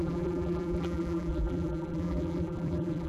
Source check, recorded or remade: remade